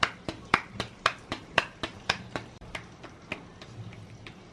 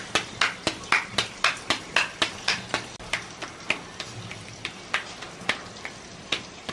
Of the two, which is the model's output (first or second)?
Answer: first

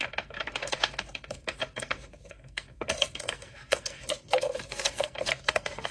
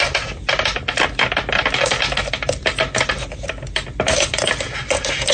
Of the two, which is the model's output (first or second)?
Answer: first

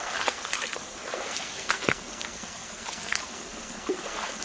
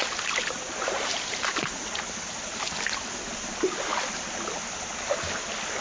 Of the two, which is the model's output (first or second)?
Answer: first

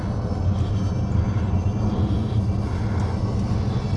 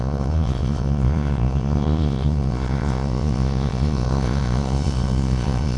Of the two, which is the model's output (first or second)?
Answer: second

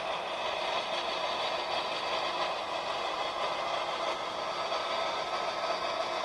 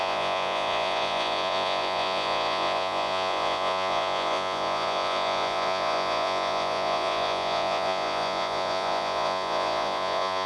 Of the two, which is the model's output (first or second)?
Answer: second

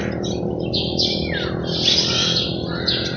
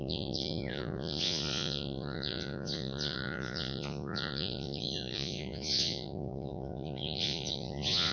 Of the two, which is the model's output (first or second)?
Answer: second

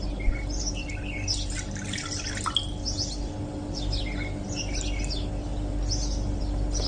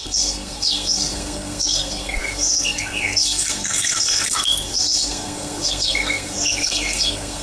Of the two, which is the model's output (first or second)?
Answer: second